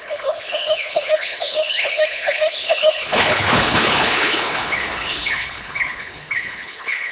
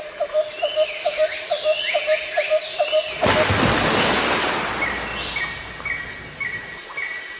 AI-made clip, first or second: first